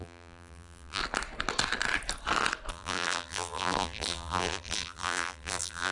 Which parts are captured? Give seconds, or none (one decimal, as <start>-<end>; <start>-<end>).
1.0-2.7